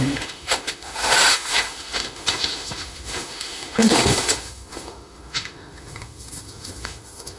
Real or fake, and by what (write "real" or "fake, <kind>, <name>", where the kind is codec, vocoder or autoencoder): fake, autoencoder, DAC-VAE